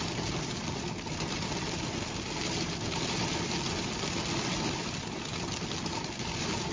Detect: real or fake real